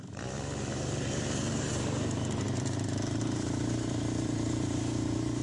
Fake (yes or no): yes